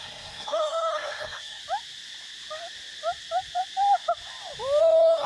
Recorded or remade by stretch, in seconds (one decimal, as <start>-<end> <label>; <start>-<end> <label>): 0.0-1.6 remade; 1.6-4.8 recorded; 4.8-5.3 remade